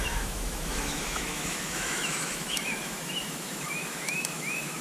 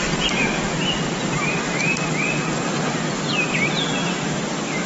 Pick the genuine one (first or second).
second